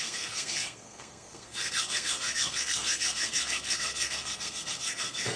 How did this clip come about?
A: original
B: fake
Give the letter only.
B